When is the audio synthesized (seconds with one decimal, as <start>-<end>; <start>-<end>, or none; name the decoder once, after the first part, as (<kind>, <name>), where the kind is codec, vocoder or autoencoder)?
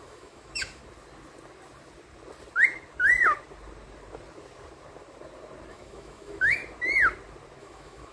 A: 0.0-0.8 (autoencoder, DAC-VAE); 5.7-6.6; 7.6-8.1